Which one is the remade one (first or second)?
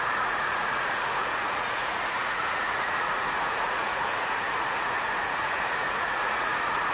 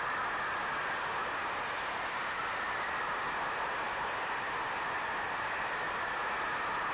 first